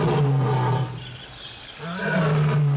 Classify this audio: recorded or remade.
recorded